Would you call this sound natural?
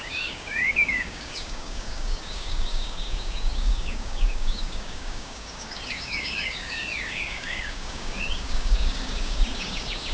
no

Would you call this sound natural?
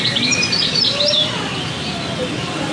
yes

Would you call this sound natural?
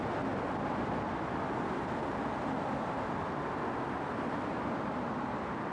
yes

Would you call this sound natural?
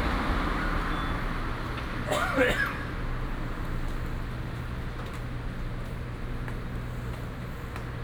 yes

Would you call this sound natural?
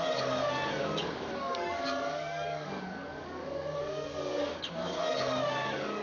no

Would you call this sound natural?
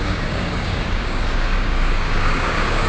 no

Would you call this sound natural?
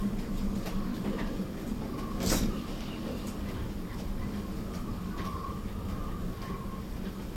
no